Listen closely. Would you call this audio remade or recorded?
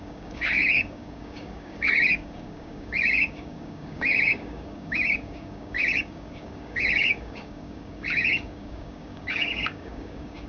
remade